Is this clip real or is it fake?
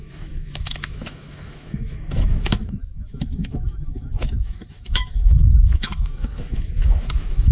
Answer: fake